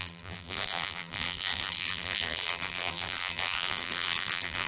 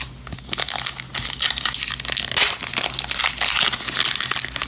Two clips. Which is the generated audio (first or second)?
first